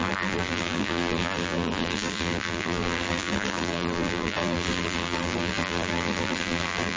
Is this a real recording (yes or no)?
no